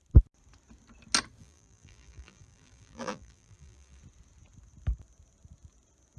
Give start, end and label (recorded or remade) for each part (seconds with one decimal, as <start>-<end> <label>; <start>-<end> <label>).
0.0-1.4 recorded; 1.4-4.0 remade; 4.0-6.2 recorded

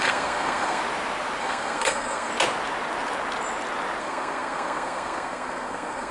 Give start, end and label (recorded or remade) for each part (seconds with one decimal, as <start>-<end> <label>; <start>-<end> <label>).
0.0-0.8 remade; 0.8-1.4 recorded; 1.4-2.3 remade; 2.3-4.0 recorded; 4.0-6.1 remade

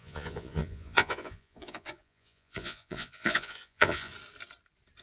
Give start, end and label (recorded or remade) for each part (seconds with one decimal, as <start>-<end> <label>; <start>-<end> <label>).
0.0-4.1 remade; 4.1-5.0 recorded

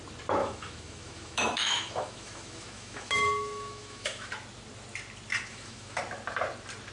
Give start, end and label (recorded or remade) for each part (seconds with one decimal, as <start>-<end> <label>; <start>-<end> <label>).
0.0-0.4 recorded; 0.4-4.3 remade; 4.3-5.5 recorded; 5.5-6.0 remade; 6.0-6.9 recorded

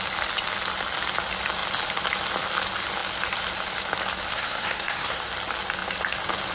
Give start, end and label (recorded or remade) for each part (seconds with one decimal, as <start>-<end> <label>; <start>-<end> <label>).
0.0-4.3 recorded; 4.3-5.2 remade; 5.2-6.5 recorded

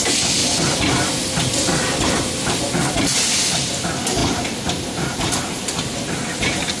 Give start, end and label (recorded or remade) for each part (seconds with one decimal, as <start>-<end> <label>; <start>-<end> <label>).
0.0-0.4 recorded; 0.4-2.6 remade; 2.6-6.8 recorded